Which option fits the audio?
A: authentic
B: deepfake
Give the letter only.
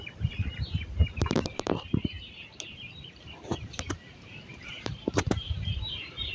B